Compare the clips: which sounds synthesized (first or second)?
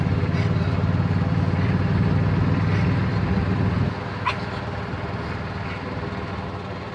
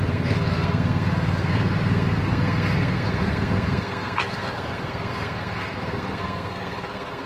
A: second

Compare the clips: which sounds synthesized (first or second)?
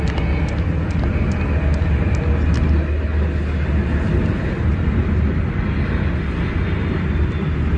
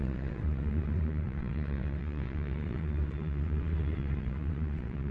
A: second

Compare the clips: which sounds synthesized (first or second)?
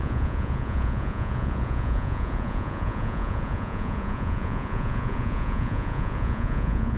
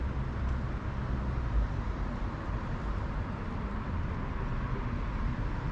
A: first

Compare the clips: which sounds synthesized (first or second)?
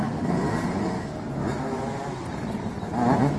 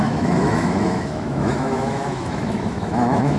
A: second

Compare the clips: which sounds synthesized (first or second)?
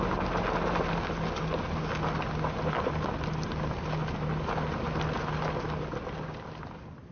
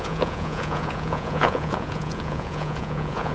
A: second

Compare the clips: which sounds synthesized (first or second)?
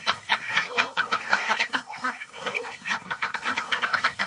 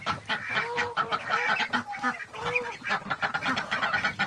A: first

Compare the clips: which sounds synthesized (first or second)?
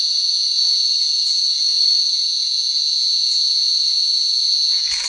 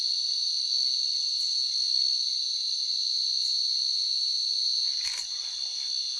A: first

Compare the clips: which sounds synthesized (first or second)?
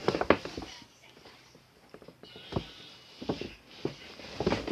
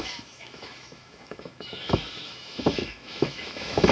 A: second